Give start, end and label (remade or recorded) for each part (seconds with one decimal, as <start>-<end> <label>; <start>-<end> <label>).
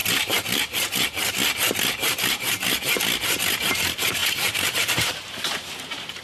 0.0-3.7 recorded; 3.7-6.2 remade